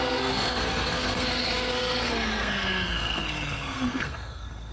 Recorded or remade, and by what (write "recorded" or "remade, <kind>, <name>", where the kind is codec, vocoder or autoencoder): remade, codec, SNAC